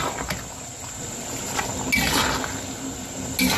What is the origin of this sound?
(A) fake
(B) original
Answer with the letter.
B